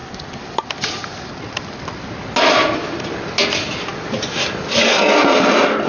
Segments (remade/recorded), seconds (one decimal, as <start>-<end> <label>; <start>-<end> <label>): 0.0-5.9 recorded